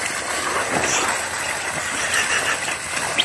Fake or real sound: real